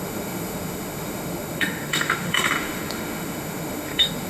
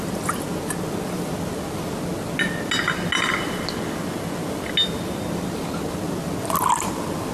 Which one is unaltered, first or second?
second